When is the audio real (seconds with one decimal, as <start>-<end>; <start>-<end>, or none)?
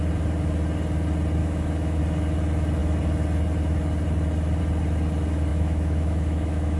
0.0-1.4; 2.0-5.5